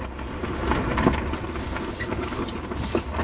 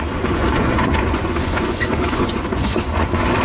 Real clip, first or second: first